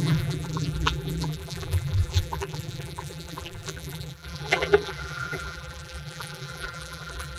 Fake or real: fake